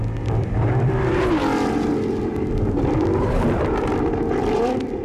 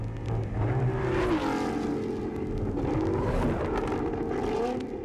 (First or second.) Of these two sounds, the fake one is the first